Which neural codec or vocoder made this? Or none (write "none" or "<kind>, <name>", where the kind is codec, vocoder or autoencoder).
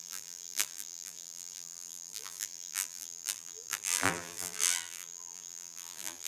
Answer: vocoder, BigVGAN v2